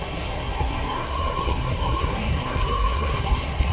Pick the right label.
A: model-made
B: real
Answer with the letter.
A